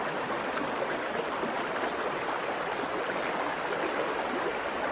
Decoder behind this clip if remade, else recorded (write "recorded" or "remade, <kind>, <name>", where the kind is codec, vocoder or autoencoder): recorded